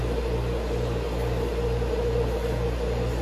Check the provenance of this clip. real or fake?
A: real